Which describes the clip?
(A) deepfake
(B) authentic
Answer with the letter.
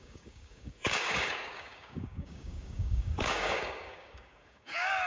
A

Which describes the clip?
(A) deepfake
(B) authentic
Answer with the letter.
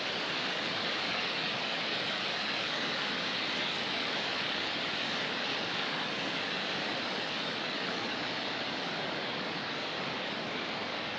A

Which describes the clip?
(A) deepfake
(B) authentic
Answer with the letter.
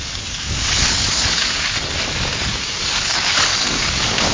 A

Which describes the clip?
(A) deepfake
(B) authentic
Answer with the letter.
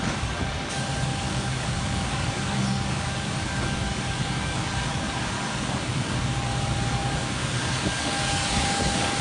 A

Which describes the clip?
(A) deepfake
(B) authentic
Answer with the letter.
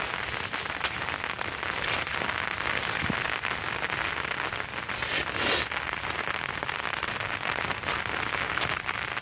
B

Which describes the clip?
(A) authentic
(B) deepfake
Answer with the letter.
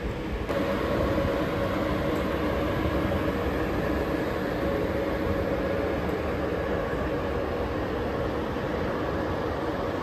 A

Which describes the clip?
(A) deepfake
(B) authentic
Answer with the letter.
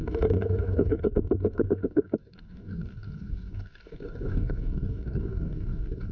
A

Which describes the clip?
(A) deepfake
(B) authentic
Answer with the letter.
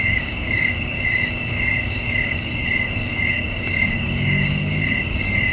A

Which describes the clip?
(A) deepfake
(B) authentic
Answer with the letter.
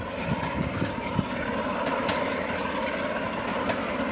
B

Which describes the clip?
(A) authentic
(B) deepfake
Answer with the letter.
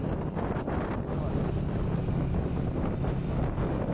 A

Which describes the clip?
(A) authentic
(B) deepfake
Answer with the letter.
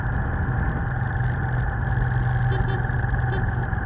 A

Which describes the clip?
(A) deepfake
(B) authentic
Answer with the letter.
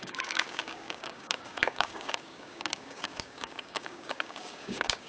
A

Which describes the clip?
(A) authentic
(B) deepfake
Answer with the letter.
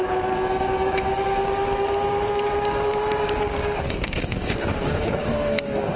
B